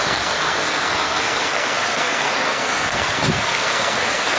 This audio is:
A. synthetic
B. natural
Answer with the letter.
A